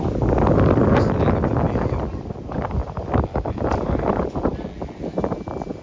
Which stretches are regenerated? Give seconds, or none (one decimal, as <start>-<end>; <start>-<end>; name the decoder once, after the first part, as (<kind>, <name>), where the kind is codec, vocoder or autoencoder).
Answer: none